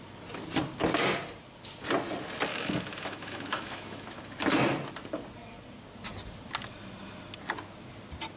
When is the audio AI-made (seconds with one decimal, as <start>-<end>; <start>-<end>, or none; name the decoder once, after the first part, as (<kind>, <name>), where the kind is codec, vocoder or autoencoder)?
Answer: 2.5-4.2 (autoencoder, DAC-VAE)